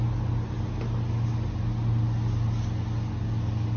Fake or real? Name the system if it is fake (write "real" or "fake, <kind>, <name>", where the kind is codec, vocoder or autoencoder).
real